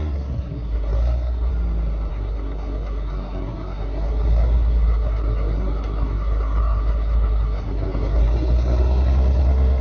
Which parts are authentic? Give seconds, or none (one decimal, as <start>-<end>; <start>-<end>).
1.5-2.1